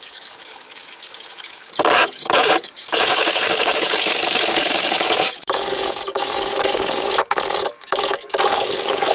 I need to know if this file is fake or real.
fake